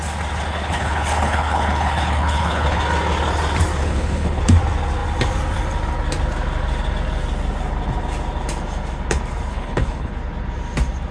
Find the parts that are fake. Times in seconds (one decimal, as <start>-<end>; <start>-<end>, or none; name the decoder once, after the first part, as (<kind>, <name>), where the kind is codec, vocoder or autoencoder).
0.5-2.8 (codec, HILCodec); 3.8-4.4; 9.5-10.1